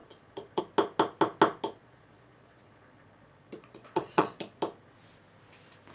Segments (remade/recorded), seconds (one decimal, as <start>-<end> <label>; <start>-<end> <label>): 0.0-0.6 remade; 0.6-1.8 recorded; 1.8-4.6 remade; 4.6-5.9 recorded